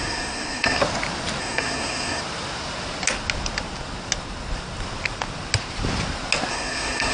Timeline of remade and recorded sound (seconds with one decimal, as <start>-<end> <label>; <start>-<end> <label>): 0.0-0.8 remade; 0.8-1.4 recorded; 1.4-2.2 remade; 2.2-6.5 recorded; 6.5-7.1 remade